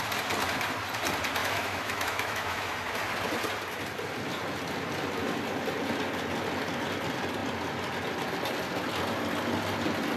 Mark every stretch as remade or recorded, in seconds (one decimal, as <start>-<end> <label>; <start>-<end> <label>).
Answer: 0.0-1.4 recorded; 1.4-2.7 remade; 2.7-10.2 recorded